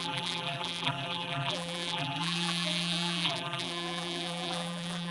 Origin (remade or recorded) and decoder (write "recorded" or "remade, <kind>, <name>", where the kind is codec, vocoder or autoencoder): remade, vocoder, BigVGAN v2